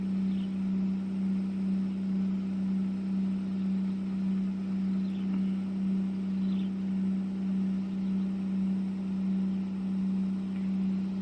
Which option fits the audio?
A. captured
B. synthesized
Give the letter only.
A